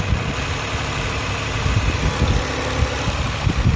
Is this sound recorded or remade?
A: recorded